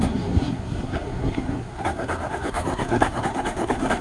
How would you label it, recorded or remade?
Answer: remade